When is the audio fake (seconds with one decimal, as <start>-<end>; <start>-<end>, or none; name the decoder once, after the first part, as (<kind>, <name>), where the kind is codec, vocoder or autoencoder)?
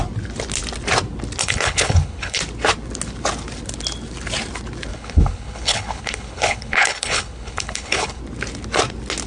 1.4-2.4 (codec, HILCodec); 4.9-8.2